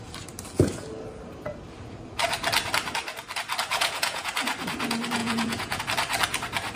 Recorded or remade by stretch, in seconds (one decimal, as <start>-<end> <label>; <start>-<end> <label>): 0.0-3.7 recorded; 3.7-4.3 remade; 4.3-5.2 recorded; 5.2-5.8 remade; 5.8-6.8 recorded